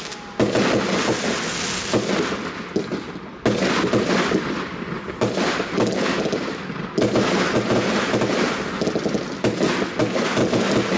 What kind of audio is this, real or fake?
real